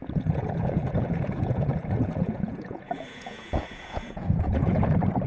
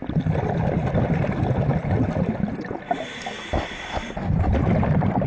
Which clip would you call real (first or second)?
second